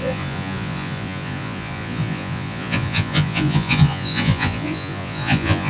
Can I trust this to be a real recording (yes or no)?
no